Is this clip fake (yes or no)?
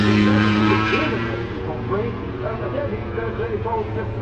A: yes